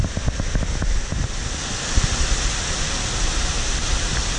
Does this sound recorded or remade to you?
recorded